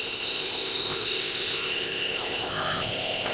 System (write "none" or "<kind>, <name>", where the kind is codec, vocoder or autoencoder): codec, ZipCodec